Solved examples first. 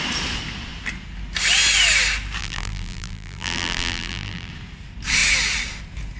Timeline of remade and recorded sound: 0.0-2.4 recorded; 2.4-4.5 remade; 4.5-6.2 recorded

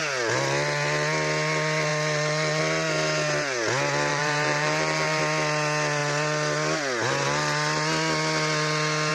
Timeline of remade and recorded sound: 0.0-4.1 recorded; 4.1-5.2 remade; 5.2-9.1 recorded

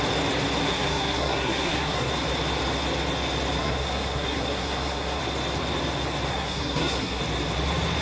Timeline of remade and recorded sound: 0.0-0.6 recorded; 0.6-2.1 remade; 2.1-3.6 recorded; 3.6-5.2 remade; 5.2-6.3 recorded; 6.3-7.2 remade; 7.2-8.0 recorded

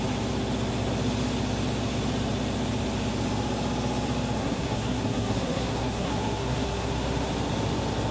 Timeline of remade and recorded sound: 0.0-4.4 recorded; 4.4-7.3 remade; 7.3-8.1 recorded

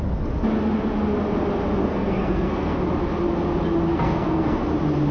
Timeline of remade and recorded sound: 0.0-1.8 recorded; 1.8-2.8 remade; 2.8-3.9 recorded; 3.9-4.6 remade; 4.6-5.1 recorded

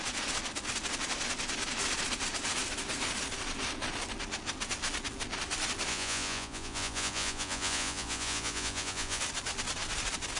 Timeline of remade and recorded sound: 0.0-5.9 recorded; 5.9-9.2 remade; 9.2-10.4 recorded